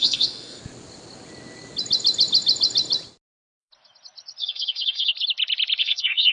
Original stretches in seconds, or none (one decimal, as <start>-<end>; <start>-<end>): 0.6-4.4; 5.1-5.8